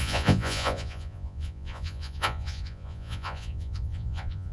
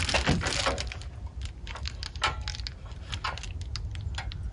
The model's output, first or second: first